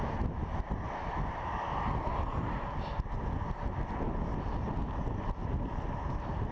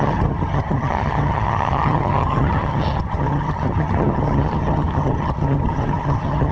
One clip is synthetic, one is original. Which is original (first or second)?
first